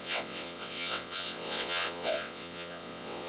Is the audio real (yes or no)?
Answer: no